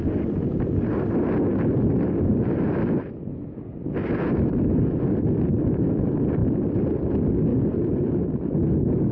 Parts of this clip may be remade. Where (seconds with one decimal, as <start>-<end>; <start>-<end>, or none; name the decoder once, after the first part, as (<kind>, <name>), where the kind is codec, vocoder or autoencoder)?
1.5-2.3 (vocoder, BigVGAN v2); 6.4-7.1

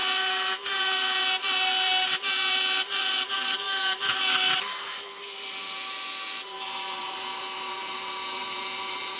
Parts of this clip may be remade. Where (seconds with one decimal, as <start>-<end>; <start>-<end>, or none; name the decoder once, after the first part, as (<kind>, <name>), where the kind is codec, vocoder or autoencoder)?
none

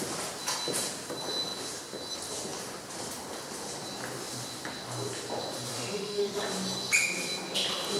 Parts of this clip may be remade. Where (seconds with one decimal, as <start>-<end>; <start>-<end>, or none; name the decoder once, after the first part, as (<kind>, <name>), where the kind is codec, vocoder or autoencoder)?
5.7-6.4 (autoencoder, DAC-VAE)

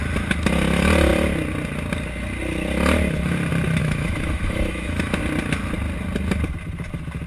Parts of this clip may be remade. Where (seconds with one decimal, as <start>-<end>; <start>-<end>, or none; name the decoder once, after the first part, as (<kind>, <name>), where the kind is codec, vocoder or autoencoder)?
3.8-5.2 (autoencoder, DAC-VAE)